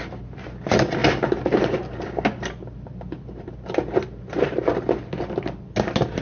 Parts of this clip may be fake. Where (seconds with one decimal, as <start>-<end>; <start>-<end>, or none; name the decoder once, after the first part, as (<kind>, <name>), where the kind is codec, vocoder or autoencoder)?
none